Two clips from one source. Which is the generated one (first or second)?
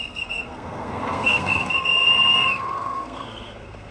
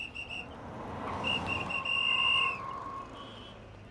first